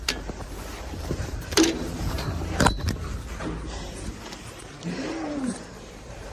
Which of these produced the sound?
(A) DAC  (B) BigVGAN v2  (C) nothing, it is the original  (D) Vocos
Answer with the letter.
B